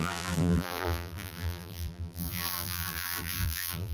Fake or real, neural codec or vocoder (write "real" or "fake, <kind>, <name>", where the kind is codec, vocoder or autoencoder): fake, vocoder, BigVGAN v2